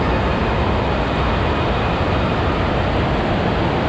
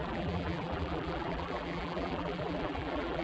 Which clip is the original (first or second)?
first